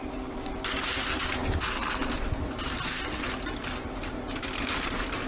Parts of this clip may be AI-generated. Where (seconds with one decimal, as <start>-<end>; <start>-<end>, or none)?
none